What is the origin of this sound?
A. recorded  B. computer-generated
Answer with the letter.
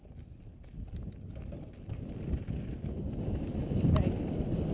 B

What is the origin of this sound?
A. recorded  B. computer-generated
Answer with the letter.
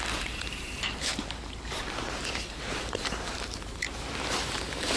B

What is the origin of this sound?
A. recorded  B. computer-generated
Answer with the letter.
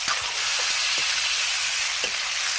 A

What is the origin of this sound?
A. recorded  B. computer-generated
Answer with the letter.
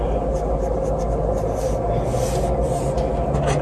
A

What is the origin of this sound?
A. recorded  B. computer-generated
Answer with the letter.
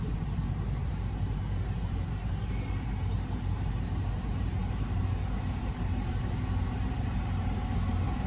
B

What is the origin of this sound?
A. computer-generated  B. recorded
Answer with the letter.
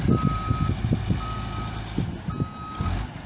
B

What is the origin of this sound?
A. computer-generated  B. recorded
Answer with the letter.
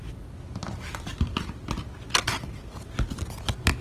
B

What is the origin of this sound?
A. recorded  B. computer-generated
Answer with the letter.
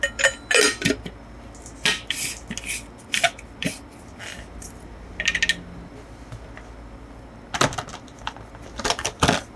A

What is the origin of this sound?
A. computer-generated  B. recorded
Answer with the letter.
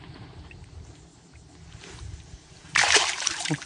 A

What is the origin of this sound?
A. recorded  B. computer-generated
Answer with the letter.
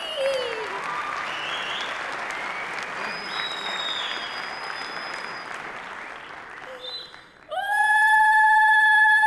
A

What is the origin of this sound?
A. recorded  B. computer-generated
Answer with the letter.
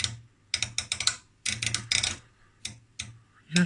A